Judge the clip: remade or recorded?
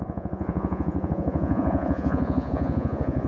remade